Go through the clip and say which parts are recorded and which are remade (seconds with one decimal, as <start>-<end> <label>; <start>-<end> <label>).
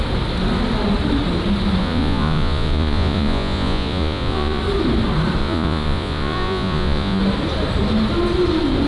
0.0-1.8 recorded; 1.8-4.6 remade; 4.6-5.4 recorded; 5.4-7.2 remade; 7.2-8.9 recorded